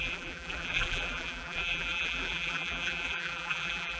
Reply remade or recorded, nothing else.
remade